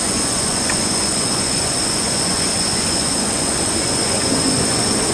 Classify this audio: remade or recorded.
remade